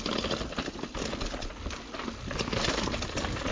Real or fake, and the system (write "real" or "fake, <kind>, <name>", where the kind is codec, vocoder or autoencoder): real